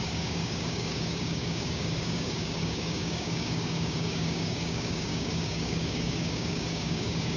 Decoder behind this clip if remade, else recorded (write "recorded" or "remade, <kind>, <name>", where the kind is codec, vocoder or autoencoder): remade, codec, DAC